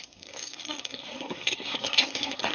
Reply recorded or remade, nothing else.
remade